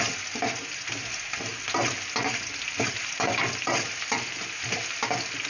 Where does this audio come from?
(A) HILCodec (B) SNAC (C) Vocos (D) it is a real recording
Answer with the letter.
D